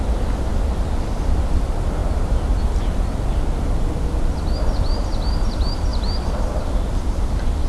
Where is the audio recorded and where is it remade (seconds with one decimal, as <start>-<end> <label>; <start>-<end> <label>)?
0.0-7.7 recorded